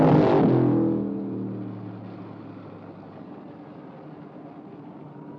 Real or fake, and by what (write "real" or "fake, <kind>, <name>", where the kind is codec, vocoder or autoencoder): real